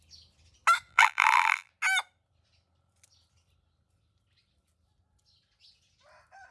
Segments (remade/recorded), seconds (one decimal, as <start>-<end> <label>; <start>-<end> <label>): 0.0-0.9 recorded; 0.9-1.7 remade; 1.7-6.5 recorded